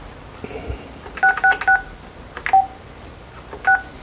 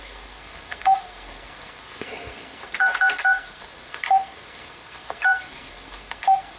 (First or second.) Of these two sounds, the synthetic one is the second